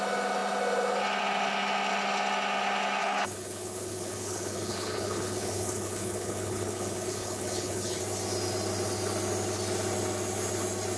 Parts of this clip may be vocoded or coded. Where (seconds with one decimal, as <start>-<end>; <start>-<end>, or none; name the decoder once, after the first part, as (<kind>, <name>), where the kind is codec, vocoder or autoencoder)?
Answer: 3.0-8.0 (codec, HILCodec)